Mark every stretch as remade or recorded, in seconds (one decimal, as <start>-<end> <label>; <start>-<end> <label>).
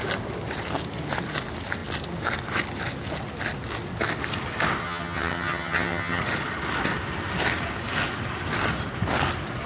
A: 0.0-4.8 recorded; 4.8-6.2 remade; 6.2-9.7 recorded